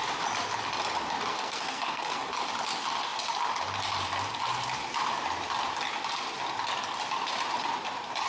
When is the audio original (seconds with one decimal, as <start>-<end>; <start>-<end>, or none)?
0.0-1.3; 2.2-8.3